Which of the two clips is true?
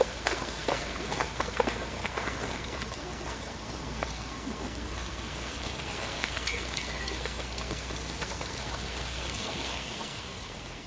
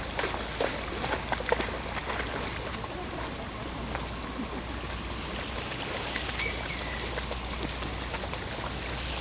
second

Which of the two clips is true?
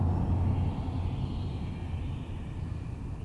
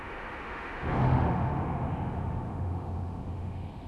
first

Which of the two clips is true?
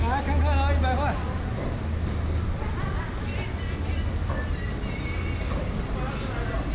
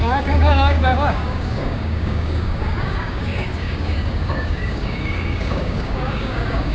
first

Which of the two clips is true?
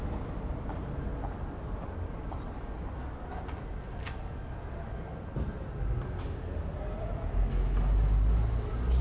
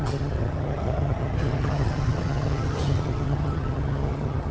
first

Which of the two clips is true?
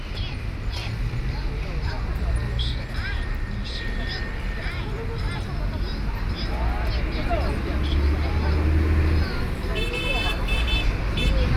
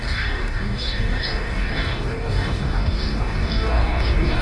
first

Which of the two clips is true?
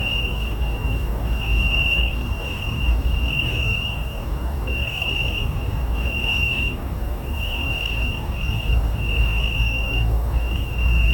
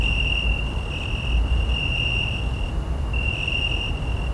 second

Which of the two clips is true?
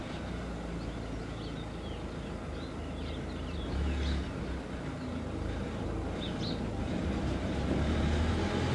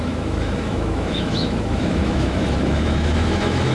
first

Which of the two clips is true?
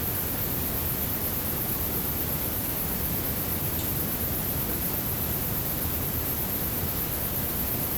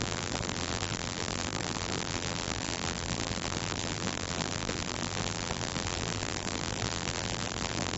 first